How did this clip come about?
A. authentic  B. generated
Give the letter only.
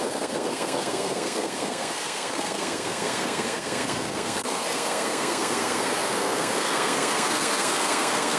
B